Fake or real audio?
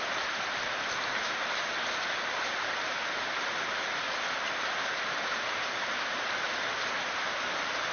real